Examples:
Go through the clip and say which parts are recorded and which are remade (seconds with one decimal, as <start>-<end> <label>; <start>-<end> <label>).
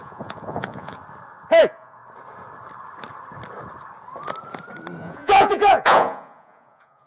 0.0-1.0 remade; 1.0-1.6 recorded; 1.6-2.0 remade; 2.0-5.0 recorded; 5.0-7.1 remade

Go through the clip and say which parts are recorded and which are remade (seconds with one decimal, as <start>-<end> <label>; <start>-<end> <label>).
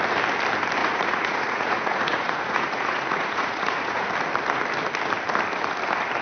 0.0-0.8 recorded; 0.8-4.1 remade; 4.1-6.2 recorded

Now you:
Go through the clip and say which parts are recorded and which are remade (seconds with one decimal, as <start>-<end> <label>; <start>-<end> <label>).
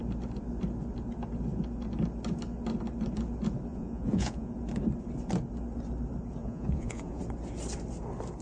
0.0-3.7 recorded; 3.7-4.5 remade; 4.5-6.4 recorded; 6.4-7.2 remade; 7.2-8.4 recorded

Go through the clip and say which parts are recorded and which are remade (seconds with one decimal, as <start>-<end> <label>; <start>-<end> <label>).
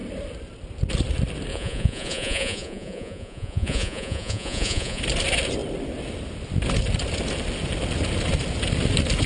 0.0-1.5 recorded; 1.5-5.0 remade; 5.0-9.3 recorded